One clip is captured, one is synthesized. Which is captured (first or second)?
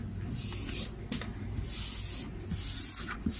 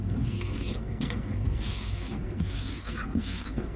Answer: first